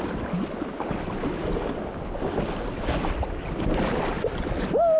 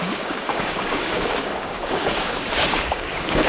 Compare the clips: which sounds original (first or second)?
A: first